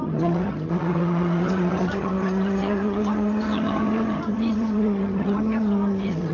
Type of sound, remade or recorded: remade